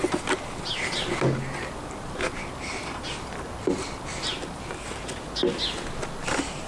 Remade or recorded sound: recorded